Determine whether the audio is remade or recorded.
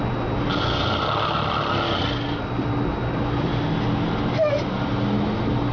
recorded